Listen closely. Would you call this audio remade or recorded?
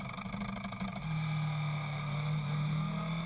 recorded